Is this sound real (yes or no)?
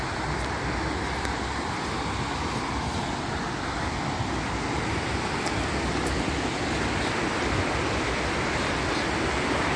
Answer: yes